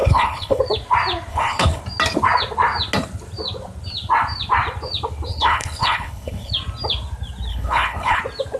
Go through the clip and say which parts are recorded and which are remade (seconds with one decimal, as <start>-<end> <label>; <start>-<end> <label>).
0.0-0.6 remade; 0.6-1.3 recorded; 1.3-1.8 remade; 1.8-5.3 recorded; 5.3-6.5 remade; 6.5-7.5 recorded; 7.5-8.2 remade; 8.2-8.6 recorded